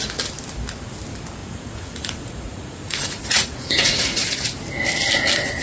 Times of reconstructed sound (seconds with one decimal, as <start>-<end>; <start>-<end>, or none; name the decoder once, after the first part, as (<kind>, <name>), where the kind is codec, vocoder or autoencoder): 1.4-4.4 (vocoder, Vocos)